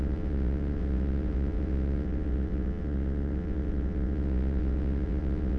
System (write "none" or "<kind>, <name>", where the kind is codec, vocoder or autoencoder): vocoder, WaveNeXt